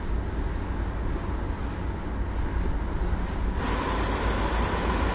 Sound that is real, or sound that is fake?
real